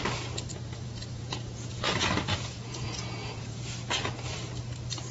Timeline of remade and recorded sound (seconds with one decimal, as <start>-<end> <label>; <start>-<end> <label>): 0.0-0.5 recorded; 0.5-3.6 remade; 3.6-5.1 recorded